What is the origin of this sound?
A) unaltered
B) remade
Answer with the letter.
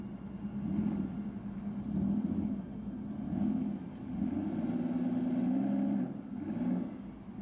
A